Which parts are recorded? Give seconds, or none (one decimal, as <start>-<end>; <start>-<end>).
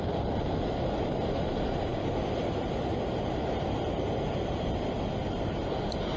0.0-6.2